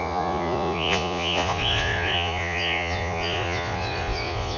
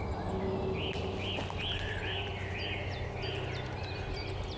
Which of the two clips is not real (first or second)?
first